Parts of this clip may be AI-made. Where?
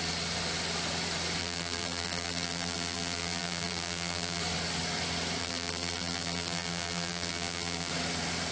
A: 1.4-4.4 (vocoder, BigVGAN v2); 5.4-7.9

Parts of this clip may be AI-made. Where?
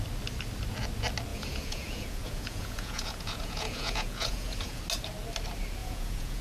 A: 1.3-4.8 (vocoder, Vocos); 5.8-6.4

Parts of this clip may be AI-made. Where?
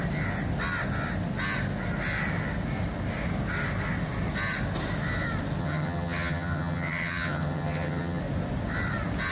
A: 5.6-8.2 (vocoder, HiFi-GAN)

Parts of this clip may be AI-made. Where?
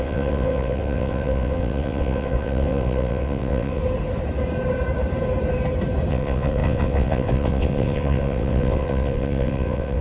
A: 0.0-3.8 (vocoder, WaveNeXt); 6.1-10.0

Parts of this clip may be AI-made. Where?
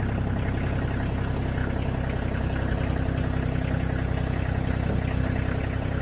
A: none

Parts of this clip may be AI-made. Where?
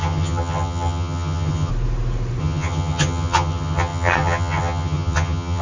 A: 0.0-1.7 (vocoder, HiFi-GAN); 2.4-5.6